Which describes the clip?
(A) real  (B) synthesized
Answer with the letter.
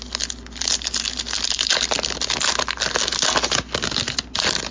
A